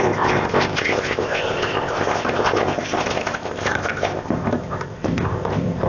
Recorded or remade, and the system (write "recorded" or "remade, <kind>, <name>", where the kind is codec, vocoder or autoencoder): remade, codec, ZipCodec